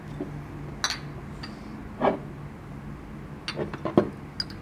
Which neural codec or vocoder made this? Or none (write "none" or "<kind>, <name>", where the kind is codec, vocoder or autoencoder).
none